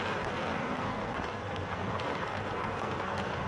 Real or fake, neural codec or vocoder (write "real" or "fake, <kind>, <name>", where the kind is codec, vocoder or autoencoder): fake, codec, SNAC